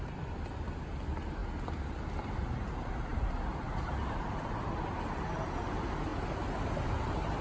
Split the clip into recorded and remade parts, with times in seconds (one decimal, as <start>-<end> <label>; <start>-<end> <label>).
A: 0.0-3.1 recorded; 3.1-4.6 remade; 4.6-7.4 recorded